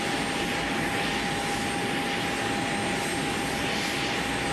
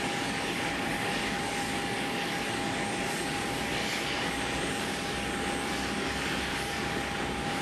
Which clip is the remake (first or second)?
second